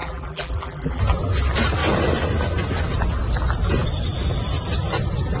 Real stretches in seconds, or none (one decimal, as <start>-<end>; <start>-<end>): 1.0-5.4